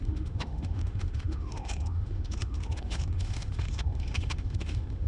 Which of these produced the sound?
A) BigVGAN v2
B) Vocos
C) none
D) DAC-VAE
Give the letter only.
D